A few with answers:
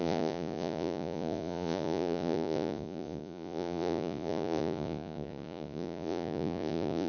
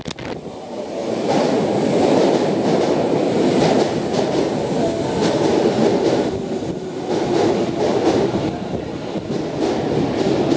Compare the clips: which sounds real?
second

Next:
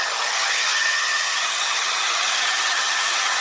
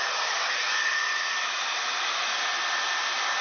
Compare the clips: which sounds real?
second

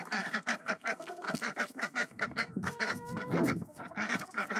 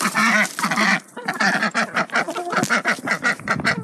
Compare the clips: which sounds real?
second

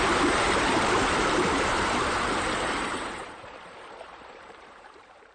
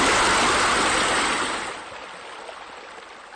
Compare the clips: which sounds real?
second